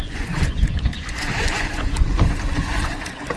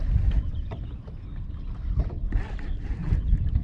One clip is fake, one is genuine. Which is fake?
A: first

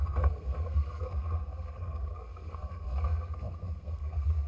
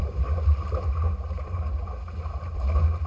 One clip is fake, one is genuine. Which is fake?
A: first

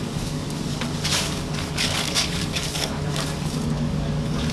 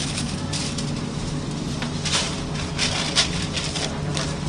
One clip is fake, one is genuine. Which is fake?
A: first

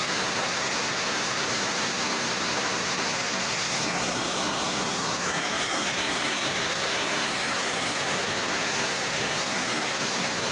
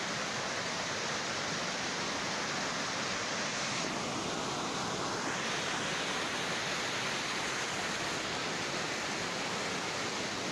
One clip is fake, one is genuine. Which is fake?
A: first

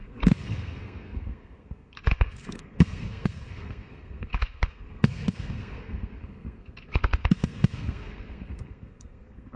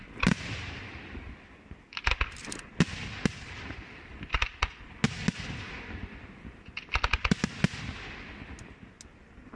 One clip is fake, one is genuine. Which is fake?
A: first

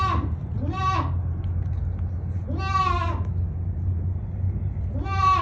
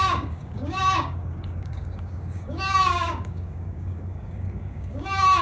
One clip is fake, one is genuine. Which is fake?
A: second